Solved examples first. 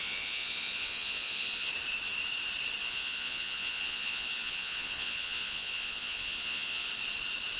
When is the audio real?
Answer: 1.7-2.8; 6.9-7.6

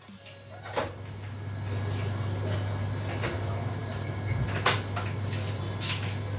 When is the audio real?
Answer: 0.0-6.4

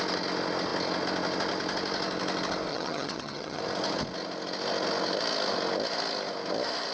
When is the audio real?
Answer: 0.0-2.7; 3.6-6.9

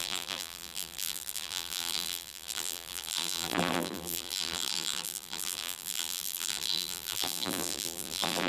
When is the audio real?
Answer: none